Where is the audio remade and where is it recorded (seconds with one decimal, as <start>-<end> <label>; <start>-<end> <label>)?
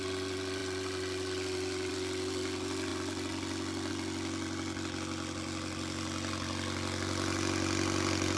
0.0-8.4 recorded